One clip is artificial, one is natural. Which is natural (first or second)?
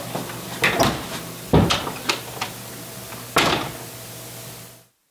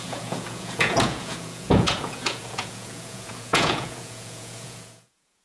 first